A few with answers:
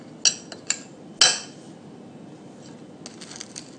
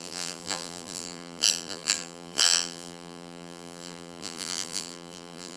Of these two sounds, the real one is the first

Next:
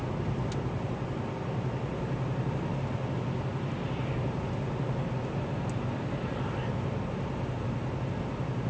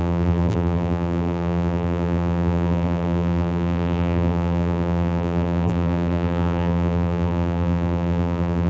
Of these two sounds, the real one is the first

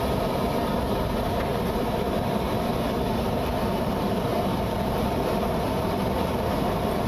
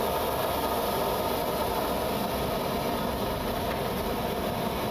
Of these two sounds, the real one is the second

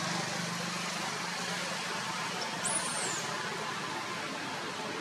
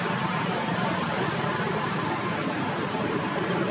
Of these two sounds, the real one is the first